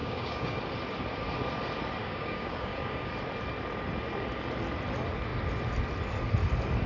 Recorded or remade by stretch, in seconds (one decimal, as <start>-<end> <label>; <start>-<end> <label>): 0.0-0.6 remade; 0.6-2.0 recorded; 2.0-3.1 remade; 3.1-6.9 recorded